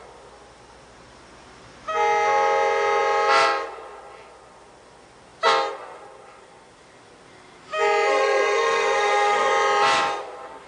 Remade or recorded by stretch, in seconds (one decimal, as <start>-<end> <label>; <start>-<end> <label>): 0.0-8.1 recorded; 8.1-9.5 remade; 9.5-10.7 recorded